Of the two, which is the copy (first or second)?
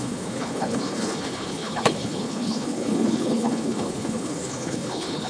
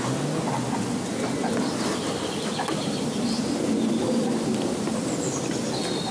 first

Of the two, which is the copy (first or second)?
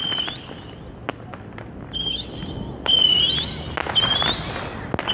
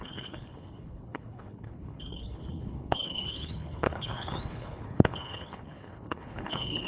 second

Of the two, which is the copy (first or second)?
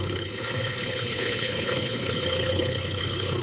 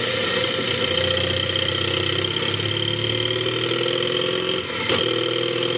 first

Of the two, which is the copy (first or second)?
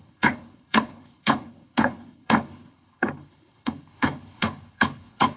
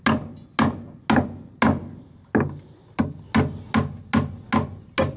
first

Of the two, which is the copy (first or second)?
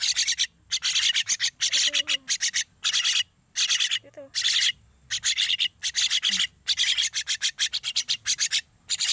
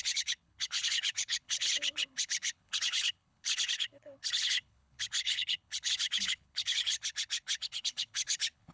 second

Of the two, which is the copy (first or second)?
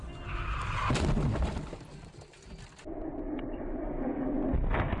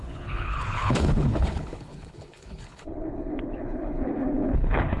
second